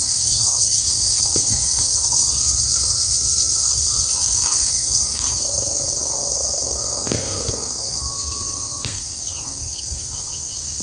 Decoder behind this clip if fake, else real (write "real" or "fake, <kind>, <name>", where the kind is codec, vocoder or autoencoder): fake, codec, SNAC